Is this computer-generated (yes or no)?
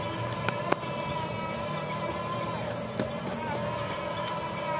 no